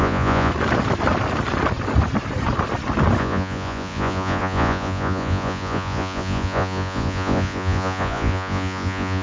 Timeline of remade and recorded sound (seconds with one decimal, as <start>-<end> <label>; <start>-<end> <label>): 0.0-0.5 remade; 0.5-3.2 recorded; 3.2-9.2 remade